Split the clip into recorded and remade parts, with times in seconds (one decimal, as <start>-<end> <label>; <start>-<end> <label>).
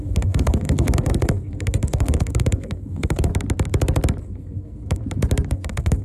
0.0-3.3 remade; 3.3-4.2 recorded; 4.2-5.0 remade; 5.0-5.5 recorded; 5.5-6.0 remade